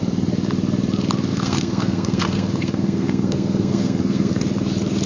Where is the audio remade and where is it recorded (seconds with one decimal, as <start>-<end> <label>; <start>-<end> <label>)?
0.0-1.3 recorded; 1.3-4.3 remade; 4.3-5.1 recorded